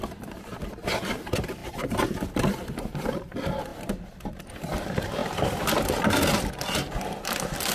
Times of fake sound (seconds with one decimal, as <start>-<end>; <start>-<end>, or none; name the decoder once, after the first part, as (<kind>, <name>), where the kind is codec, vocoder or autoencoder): 0.0-3.7 (vocoder, BigVGAN v2); 4.3-5.2